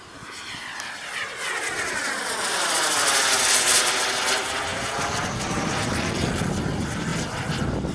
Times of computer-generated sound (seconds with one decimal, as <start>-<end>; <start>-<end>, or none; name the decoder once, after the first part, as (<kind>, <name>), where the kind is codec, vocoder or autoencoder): none